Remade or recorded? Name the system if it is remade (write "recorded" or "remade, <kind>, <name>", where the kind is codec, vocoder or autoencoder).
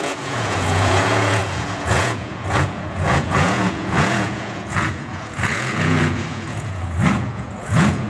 remade, vocoder, Vocos